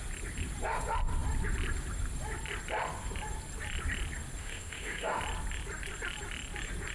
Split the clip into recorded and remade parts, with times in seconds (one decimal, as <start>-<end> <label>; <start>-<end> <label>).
0.0-4.4 recorded; 4.4-5.2 remade; 5.2-6.9 recorded